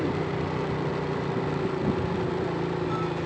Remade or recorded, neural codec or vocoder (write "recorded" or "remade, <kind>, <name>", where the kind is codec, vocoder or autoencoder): recorded